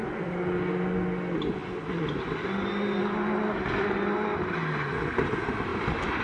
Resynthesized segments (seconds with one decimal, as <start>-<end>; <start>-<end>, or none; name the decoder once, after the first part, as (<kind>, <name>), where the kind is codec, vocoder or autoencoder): none